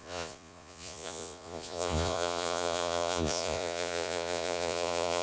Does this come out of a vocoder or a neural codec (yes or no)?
yes